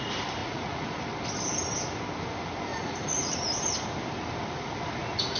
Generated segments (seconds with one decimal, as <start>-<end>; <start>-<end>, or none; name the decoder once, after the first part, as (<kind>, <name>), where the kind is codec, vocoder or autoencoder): 0.4-1.0 (vocoder, Vocos); 2.7-3.3